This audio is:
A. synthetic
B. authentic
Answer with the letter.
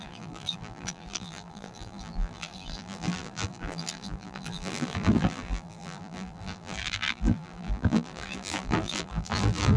A